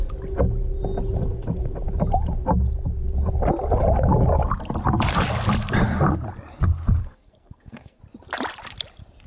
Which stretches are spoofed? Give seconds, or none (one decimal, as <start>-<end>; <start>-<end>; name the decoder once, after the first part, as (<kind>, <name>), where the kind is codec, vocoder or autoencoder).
7.0-8.0 (codec, SNAC)